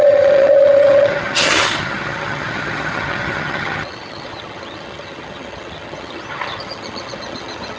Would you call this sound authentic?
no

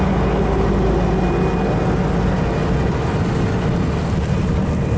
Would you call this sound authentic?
yes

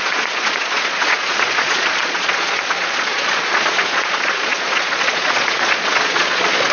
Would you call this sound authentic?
no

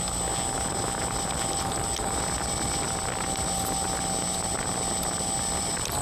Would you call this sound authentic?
yes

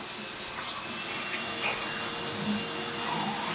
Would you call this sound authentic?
yes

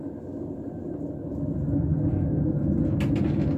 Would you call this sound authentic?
yes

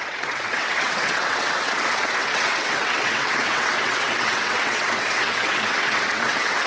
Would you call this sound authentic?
no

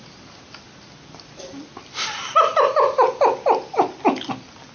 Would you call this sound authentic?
yes